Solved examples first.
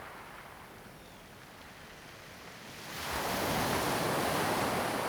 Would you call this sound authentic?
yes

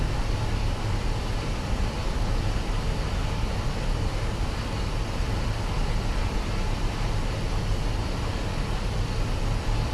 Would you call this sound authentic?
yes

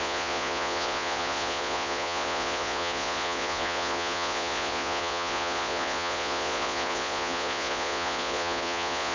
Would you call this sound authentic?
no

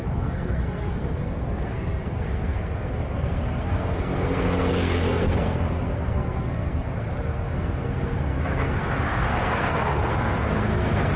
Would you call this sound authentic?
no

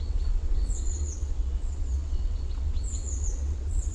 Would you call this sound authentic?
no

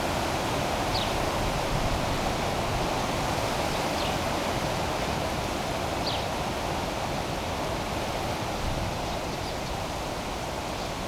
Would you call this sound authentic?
yes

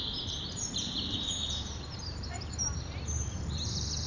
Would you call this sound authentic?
no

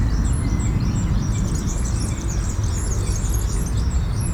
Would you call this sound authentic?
yes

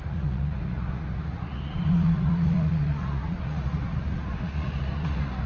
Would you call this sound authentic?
no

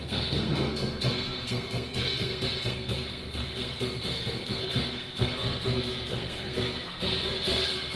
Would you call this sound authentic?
no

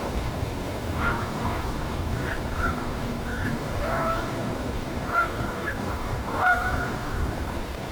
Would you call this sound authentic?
no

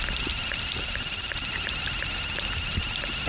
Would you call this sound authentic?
yes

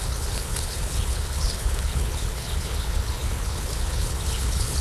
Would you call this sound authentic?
no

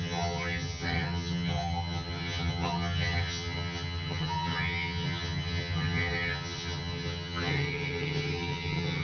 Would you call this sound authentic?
no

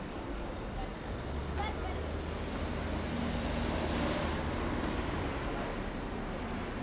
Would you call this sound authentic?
yes